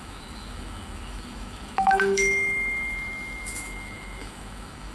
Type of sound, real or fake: fake